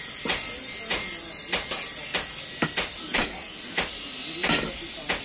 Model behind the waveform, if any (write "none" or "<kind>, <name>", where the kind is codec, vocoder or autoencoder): none